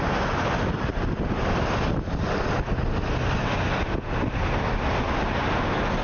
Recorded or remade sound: recorded